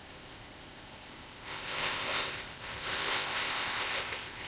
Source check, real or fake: fake